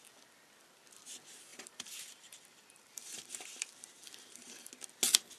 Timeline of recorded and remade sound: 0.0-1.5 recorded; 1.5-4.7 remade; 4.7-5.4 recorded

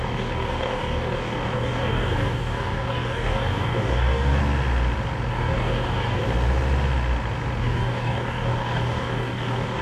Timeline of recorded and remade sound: 0.0-4.4 remade; 4.4-5.3 recorded; 5.3-6.2 remade; 6.2-7.6 recorded; 7.6-9.8 remade

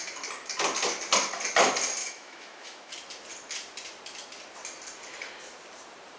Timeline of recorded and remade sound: 0.0-2.0 recorded; 2.0-2.9 remade; 2.9-6.2 recorded

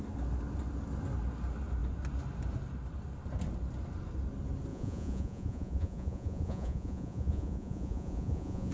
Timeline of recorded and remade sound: 0.0-4.7 recorded; 4.7-8.7 remade

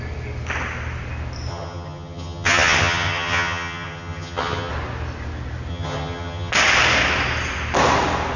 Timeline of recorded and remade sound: 0.0-1.5 recorded; 1.5-4.7 remade; 4.7-5.7 recorded; 5.7-6.5 remade; 6.5-8.4 recorded

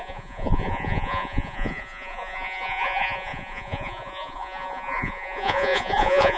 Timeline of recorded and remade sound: 0.0-6.4 remade

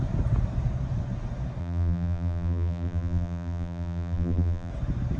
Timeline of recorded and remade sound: 0.0-1.6 recorded; 1.6-4.7 remade; 4.7-5.2 recorded

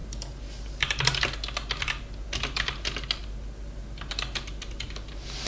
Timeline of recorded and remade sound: 0.0-5.5 recorded